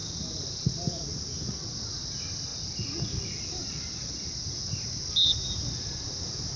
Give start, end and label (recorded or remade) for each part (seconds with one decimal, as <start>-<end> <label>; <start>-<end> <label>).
0.0-6.6 recorded